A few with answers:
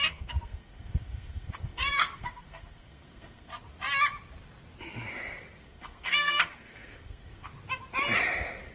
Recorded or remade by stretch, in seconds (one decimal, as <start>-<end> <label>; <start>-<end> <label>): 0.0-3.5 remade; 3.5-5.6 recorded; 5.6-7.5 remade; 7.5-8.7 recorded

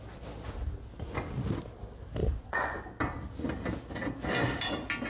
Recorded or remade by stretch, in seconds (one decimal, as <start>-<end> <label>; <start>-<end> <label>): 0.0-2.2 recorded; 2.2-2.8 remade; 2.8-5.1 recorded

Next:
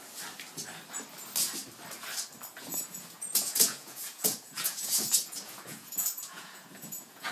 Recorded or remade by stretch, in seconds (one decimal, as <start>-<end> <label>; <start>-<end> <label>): 0.0-2.5 recorded; 2.5-7.3 remade